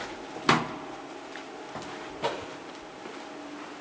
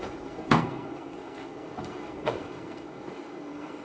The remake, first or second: second